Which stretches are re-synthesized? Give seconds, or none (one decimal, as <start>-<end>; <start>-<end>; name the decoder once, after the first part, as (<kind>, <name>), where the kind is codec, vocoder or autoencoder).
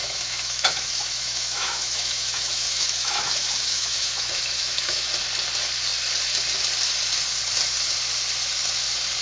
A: 0.0-5.1 (autoencoder, DAC-VAE)